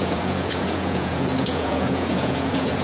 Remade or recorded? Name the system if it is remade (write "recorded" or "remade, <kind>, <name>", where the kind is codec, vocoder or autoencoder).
remade, vocoder, Vocos